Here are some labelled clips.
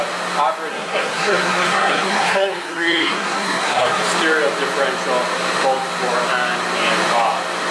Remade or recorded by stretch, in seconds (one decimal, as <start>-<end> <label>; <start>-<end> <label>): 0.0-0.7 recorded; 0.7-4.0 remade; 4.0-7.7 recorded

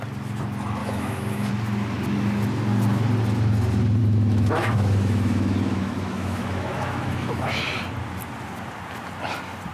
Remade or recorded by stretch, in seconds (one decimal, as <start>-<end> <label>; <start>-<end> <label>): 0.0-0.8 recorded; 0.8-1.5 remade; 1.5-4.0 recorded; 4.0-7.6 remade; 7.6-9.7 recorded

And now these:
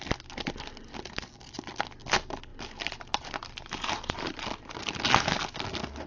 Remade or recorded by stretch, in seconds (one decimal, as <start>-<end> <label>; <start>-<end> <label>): 0.0-6.1 recorded

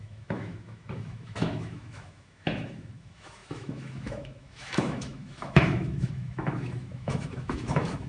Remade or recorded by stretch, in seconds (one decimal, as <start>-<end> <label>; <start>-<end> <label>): 0.0-8.1 remade

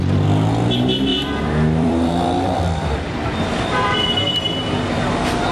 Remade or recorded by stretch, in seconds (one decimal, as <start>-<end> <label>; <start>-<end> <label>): 0.0-1.1 recorded; 1.1-4.4 remade; 4.4-5.5 recorded